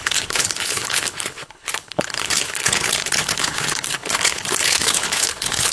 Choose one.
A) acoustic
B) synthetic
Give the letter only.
B